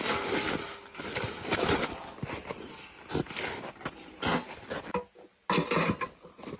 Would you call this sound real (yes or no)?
yes